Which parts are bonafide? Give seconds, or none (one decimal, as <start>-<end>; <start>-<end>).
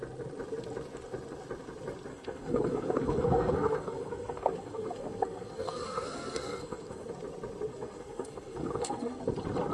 0.0-2.1; 7.1-7.7; 9.2-9.7